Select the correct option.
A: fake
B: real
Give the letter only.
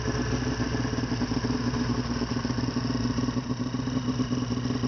B